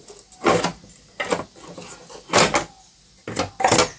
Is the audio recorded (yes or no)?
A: yes